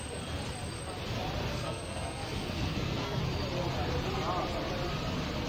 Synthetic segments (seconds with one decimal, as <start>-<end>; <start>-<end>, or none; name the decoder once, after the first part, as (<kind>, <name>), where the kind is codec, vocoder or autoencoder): 1.5-3.2 (codec, SNAC)